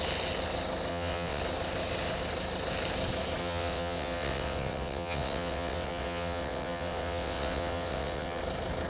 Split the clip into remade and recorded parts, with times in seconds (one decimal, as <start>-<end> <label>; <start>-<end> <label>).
0.0-0.9 recorded; 0.9-1.4 remade; 1.4-3.4 recorded; 3.4-8.4 remade; 8.4-8.9 recorded